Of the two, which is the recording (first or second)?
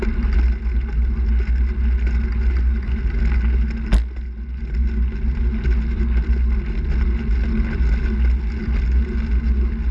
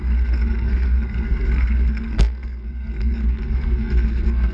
first